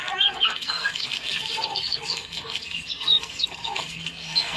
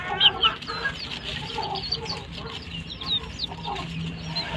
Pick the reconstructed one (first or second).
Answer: first